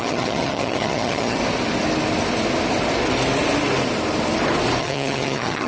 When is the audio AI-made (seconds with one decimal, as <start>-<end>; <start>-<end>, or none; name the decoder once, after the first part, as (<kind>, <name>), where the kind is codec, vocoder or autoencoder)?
0.0-1.4 (vocoder, HiFi-GAN); 4.8-5.7